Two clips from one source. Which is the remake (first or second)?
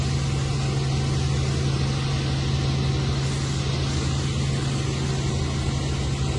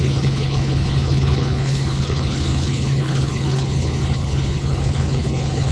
second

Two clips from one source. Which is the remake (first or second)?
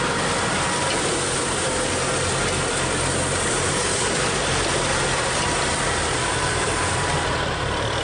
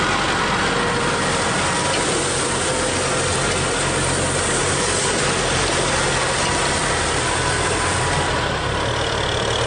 first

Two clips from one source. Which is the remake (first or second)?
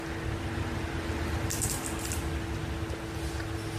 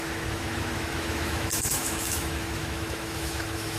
second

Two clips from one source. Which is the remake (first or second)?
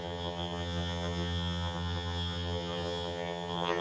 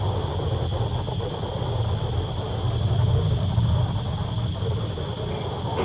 first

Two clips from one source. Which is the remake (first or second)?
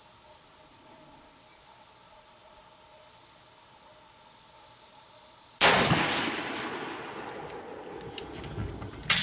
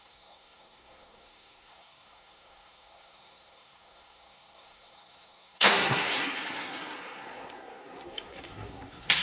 second